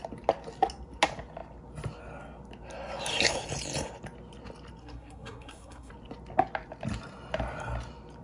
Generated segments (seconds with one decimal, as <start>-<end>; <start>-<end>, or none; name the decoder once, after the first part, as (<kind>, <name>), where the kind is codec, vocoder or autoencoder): 4.8-5.9 (codec, SNAC)